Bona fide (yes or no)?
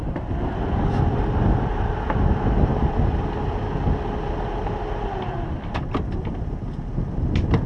yes